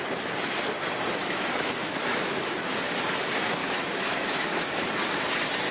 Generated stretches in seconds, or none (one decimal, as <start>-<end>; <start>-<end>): 1.2-2.4; 3.6-4.9